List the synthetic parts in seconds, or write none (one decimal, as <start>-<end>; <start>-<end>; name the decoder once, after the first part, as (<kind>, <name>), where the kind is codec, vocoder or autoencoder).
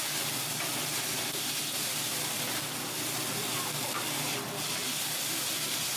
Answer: none